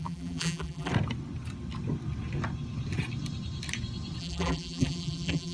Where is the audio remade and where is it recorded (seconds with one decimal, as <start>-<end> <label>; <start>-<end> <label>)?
0.0-0.9 remade; 0.9-4.2 recorded; 4.2-5.5 remade